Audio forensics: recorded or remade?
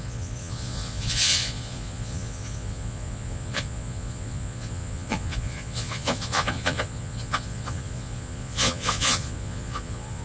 remade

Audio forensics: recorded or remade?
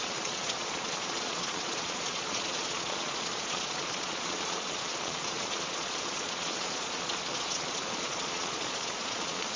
remade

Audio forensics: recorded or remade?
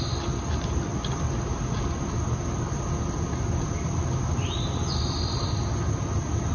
recorded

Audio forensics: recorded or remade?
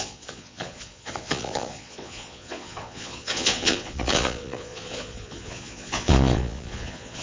remade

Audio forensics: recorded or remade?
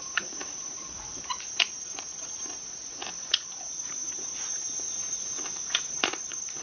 remade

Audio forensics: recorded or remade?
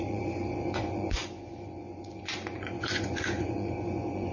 remade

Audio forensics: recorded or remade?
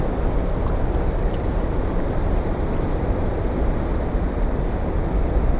recorded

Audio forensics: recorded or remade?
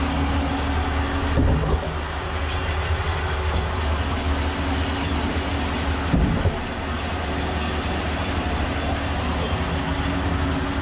recorded